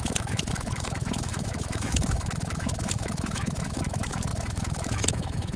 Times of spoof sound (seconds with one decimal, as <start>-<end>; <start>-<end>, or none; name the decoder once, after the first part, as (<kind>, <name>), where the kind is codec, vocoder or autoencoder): 0.0-5.6 (autoencoder, DAC-VAE)